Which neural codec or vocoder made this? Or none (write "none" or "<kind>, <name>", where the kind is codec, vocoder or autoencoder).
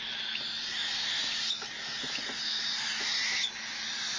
none